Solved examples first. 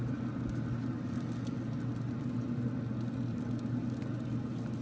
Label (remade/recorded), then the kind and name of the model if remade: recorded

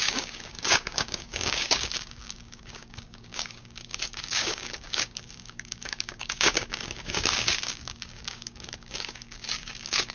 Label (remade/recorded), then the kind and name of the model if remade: remade, codec, DAC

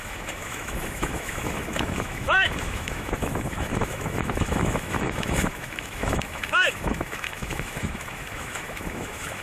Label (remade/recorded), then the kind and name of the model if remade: remade, autoencoder, DAC-VAE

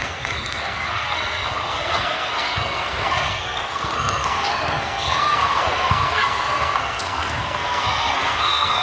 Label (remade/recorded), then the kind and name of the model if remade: remade, codec, SNAC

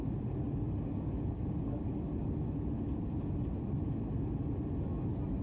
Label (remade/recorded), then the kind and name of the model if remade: recorded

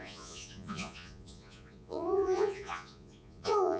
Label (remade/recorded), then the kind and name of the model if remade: remade, vocoder, Vocos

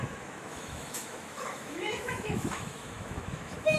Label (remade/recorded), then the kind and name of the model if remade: remade, autoencoder, DAC-VAE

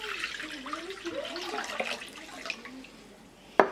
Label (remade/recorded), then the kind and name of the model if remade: recorded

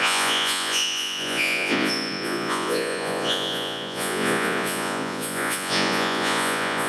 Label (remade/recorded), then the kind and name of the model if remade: remade, vocoder, Vocos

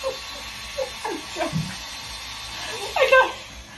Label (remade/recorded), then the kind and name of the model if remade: recorded